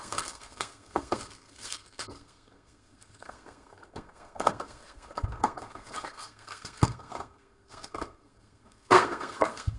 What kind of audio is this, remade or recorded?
remade